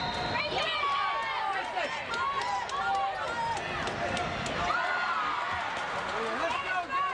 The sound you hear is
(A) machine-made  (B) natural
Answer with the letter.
B